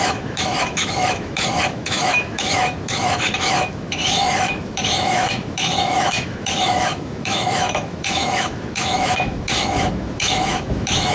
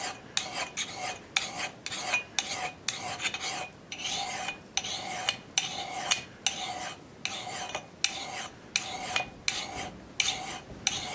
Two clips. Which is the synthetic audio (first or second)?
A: first